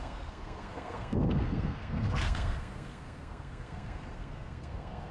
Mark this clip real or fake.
fake